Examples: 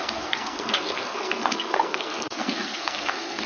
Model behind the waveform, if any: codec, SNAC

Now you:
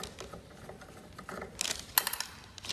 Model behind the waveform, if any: none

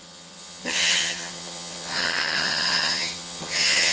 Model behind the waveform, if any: vocoder, HiFi-GAN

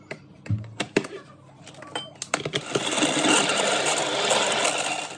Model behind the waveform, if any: none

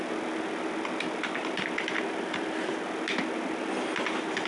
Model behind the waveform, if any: none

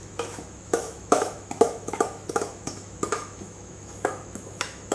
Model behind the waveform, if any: autoencoder, DAC-VAE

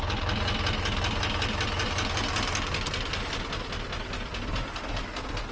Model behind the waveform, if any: none